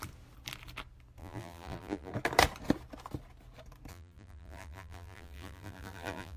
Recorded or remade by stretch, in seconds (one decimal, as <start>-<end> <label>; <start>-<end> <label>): 0.0-1.2 recorded; 1.2-2.1 remade; 2.1-3.9 recorded; 3.9-6.4 remade